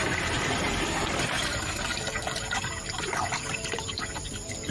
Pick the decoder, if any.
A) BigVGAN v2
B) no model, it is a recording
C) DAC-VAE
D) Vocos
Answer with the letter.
A